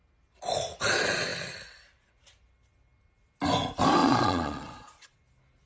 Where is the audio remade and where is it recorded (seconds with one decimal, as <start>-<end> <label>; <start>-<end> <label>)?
0.0-4.0 recorded; 4.0-5.2 remade; 5.2-5.7 recorded